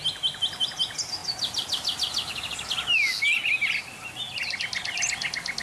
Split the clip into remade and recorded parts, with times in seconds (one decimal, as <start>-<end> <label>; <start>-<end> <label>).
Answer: 0.0-5.6 recorded